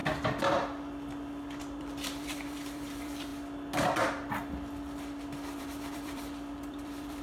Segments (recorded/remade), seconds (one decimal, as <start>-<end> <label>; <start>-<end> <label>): 0.0-1.6 recorded; 1.6-3.3 remade; 3.3-5.6 recorded; 5.6-7.2 remade